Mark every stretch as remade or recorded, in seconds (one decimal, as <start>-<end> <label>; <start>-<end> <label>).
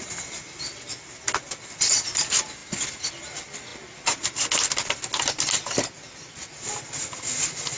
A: 0.0-7.8 recorded